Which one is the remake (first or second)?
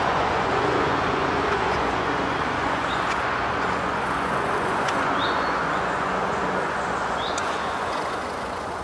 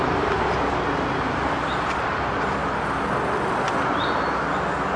first